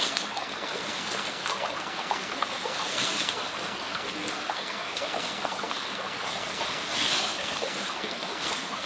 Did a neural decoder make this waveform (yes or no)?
yes